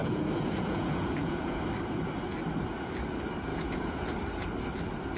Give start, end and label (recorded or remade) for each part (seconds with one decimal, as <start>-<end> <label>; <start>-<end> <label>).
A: 0.0-1.6 remade; 1.6-3.5 recorded; 3.5-4.2 remade; 4.2-5.2 recorded